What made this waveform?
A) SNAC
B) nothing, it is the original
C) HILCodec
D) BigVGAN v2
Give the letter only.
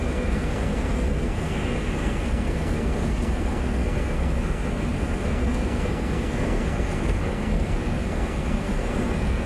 A